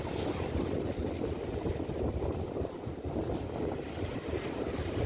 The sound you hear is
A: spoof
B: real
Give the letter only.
B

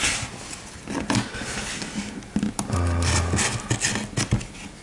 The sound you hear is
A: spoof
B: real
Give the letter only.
B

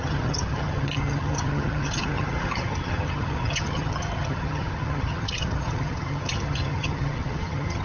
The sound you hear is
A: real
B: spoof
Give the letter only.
B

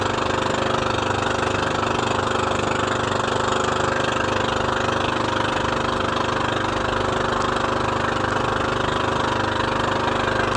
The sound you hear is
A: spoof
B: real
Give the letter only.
B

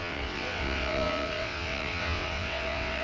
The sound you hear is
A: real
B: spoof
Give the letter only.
B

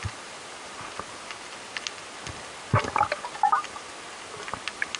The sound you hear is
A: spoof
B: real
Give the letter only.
B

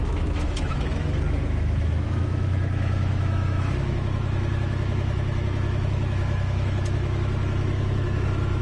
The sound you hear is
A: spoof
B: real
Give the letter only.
A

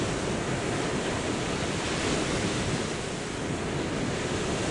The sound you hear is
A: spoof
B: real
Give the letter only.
B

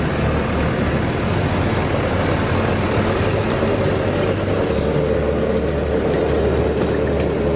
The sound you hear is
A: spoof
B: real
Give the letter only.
B